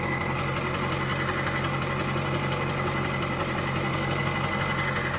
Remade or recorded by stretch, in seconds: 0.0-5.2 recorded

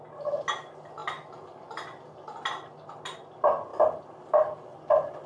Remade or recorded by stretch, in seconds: 0.0-5.3 recorded

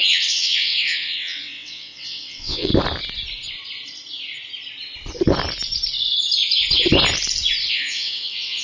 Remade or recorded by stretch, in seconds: 0.0-2.7 remade; 2.7-7.7 recorded; 7.7-8.6 remade

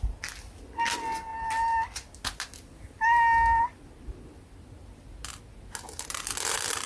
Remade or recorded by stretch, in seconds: 0.0-6.9 recorded

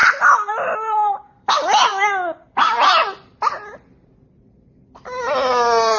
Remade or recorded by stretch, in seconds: 0.0-1.5 remade; 1.5-6.0 recorded

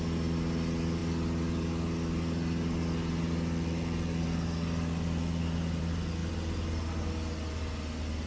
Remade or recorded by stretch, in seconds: 0.0-8.3 recorded

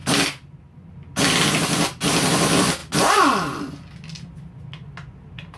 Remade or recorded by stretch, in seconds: 0.0-5.6 recorded

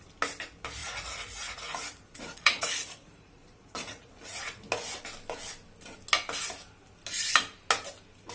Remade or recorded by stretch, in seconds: 0.0-0.8 recorded; 0.8-4.1 remade; 4.1-8.3 recorded